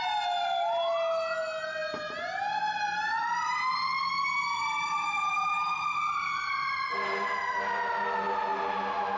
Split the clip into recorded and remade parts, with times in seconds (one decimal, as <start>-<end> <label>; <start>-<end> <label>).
0.0-9.2 recorded